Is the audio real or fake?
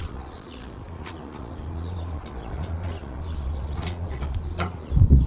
fake